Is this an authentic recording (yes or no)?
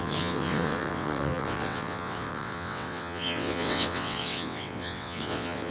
no